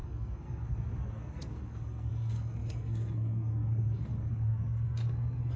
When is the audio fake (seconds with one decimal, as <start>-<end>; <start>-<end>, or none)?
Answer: 0.0-5.6